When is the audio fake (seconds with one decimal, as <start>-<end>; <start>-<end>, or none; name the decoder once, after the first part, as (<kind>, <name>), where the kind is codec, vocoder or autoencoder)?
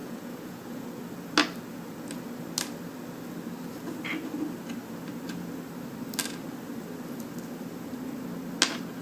0.0-0.9 (vocoder, Vocos)